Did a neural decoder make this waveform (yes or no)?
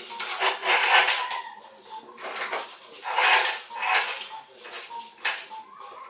no